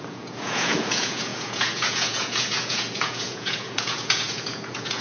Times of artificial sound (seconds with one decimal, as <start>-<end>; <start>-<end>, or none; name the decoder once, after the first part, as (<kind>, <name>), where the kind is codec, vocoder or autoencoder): 0.0-5.0 (vocoder, Vocos)